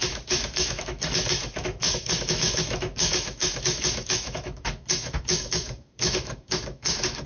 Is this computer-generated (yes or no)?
yes